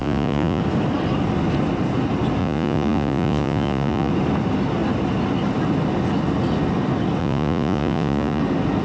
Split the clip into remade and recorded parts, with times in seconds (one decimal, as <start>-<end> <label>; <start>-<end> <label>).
0.0-0.6 remade; 0.6-2.4 recorded; 2.4-4.1 remade; 4.1-7.2 recorded; 7.2-8.4 remade; 8.4-8.8 recorded